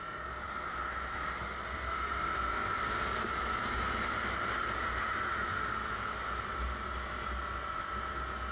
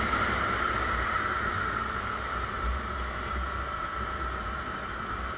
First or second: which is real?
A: first